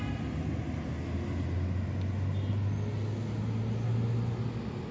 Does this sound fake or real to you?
real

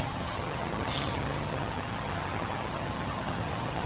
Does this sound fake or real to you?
fake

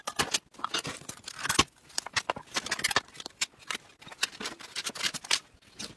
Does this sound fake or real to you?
real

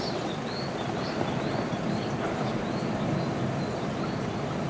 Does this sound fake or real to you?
real